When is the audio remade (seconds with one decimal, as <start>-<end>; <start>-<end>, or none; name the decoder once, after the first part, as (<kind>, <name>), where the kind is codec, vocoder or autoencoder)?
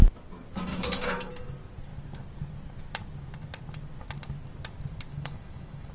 0.7-1.3 (autoencoder, DAC-VAE); 5.1-5.9